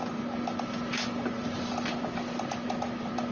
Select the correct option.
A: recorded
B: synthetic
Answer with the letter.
A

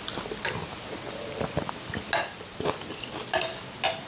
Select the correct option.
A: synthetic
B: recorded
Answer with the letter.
B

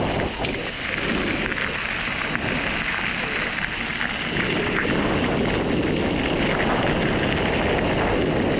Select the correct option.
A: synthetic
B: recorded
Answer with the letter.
B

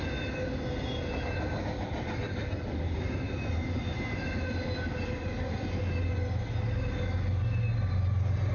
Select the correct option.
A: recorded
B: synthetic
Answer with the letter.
A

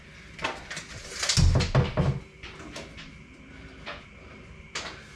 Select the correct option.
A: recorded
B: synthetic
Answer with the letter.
A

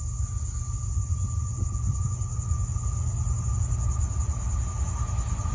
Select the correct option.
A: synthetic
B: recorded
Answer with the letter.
B